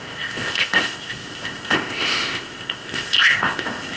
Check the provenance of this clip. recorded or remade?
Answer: remade